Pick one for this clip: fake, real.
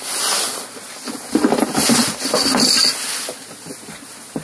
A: real